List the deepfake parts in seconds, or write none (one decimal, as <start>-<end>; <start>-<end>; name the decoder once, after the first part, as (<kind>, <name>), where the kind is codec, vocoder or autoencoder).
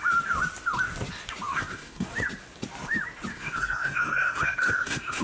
1.5-2.1 (codec, SNAC); 3.3-5.2